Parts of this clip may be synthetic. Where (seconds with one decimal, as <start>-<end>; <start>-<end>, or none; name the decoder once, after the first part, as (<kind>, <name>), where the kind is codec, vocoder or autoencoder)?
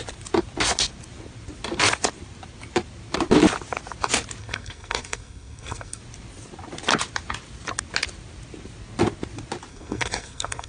4.4-6.0 (codec, SNAC); 9.7-10.7